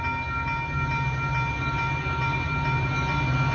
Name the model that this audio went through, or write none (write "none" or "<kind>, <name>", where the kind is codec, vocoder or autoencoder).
none